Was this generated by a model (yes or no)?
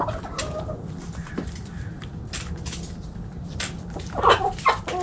no